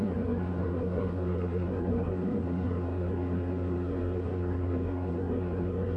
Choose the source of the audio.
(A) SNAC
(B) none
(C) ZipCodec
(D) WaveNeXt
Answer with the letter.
A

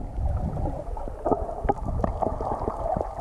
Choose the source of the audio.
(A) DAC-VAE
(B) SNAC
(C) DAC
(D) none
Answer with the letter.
D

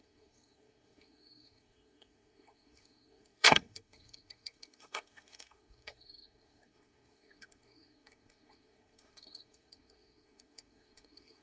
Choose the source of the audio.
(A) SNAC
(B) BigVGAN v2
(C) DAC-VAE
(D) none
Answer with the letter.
A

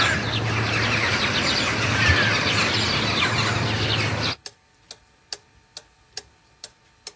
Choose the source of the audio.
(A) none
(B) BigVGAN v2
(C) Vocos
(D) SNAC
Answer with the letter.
A